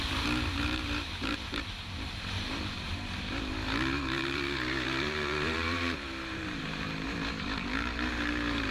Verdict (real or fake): fake